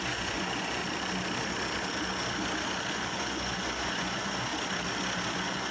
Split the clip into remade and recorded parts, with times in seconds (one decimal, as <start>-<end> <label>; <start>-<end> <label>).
0.0-0.8 remade; 0.8-2.9 recorded; 2.9-4.5 remade; 4.5-5.3 recorded; 5.3-5.7 remade